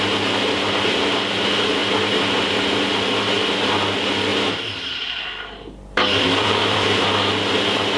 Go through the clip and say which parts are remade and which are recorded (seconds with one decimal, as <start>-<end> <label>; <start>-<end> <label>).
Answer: 0.0-1.8 recorded; 1.8-2.6 remade; 2.6-4.3 recorded; 4.3-7.3 remade; 7.3-8.0 recorded

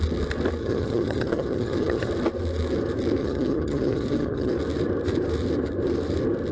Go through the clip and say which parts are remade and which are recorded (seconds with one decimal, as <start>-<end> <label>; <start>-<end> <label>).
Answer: 0.0-0.6 recorded; 0.6-2.1 remade; 2.1-3.2 recorded; 3.2-4.5 remade; 4.5-6.5 recorded

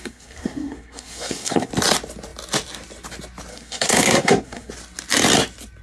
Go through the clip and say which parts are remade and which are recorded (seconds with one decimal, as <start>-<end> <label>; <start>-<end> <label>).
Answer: 0.0-1.7 remade; 1.7-3.5 recorded; 3.5-4.7 remade; 4.7-5.8 recorded